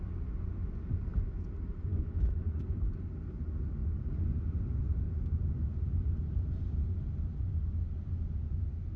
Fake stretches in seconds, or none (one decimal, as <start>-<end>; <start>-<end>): 1.9-2.6